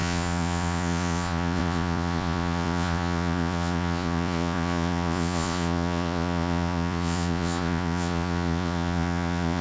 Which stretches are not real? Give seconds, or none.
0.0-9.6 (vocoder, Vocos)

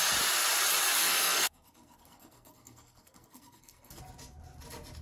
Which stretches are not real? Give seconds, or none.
1.0-4.0 (codec, SNAC)

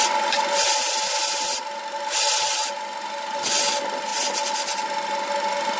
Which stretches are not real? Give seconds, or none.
none

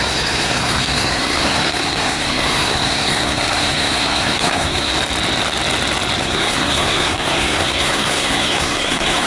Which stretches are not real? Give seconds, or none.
0.0-4.9 (codec, SNAC); 6.2-9.3

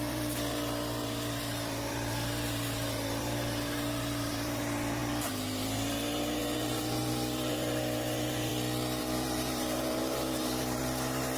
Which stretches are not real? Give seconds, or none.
0.0-8.5 (vocoder, BigVGAN v2); 9.0-11.4

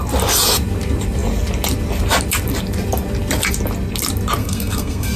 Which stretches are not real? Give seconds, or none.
4.4-5.2 (codec, SNAC)

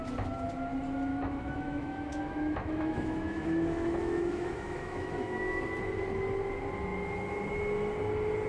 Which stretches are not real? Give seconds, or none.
1.1-5.6 (autoencoder, DAC-VAE)